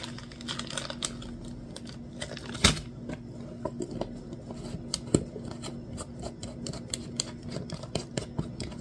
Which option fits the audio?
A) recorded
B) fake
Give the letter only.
A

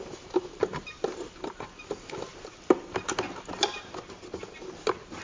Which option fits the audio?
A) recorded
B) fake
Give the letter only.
A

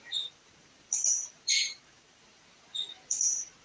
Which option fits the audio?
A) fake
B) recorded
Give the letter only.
A